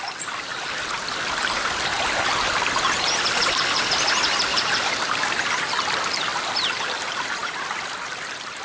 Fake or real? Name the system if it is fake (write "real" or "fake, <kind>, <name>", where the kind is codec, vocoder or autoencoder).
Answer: real